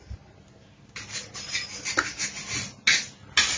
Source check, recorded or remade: recorded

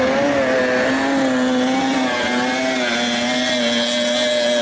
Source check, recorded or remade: recorded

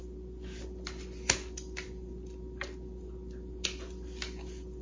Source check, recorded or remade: recorded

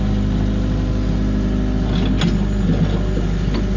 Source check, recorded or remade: recorded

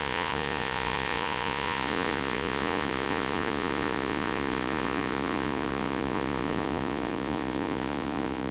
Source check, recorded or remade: remade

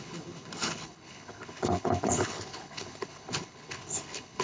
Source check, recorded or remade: remade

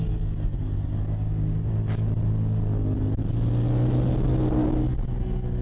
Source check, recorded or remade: recorded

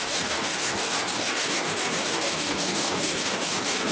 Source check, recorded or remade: remade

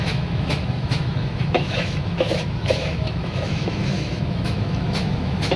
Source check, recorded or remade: remade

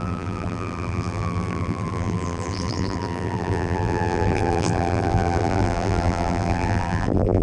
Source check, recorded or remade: remade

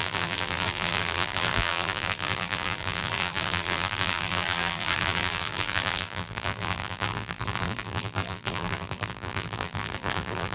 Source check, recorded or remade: remade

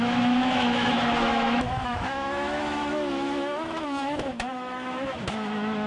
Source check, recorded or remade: remade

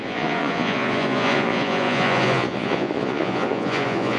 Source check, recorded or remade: remade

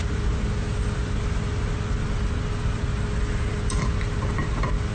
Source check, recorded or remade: recorded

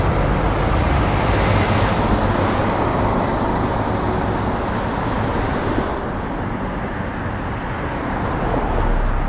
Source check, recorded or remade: recorded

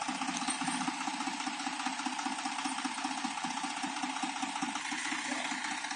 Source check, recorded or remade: remade